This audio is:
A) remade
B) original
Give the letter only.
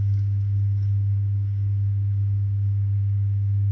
A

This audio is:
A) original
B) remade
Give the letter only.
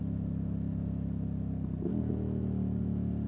A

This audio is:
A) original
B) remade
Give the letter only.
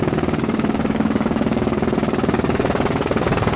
B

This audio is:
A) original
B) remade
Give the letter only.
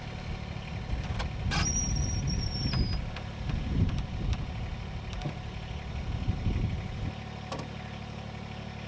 A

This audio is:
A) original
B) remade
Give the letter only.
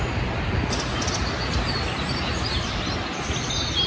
A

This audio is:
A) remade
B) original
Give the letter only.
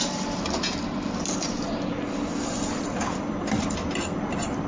B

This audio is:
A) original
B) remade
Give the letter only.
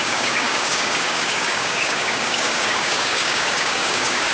B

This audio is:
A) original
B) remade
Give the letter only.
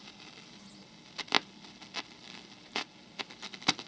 A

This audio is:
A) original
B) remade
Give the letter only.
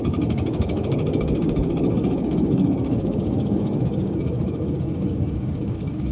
B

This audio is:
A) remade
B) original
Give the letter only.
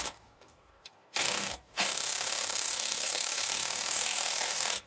A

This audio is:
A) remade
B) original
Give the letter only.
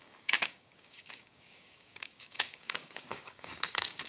A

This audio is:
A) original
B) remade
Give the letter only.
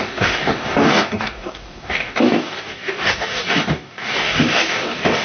B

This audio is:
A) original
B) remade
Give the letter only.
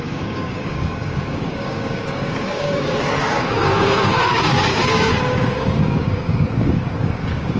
B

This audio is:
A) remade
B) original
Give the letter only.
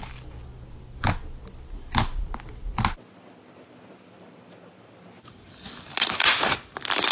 B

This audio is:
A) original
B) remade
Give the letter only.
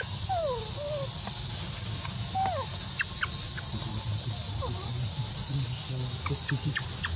A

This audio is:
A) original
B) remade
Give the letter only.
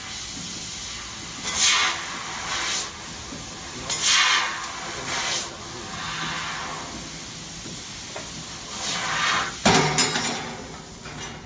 A